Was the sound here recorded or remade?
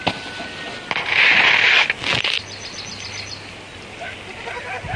recorded